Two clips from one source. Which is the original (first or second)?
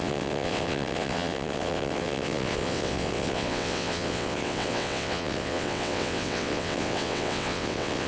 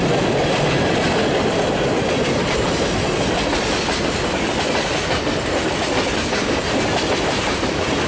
second